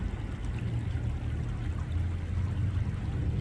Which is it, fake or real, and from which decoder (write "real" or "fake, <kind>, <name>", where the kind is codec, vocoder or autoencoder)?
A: real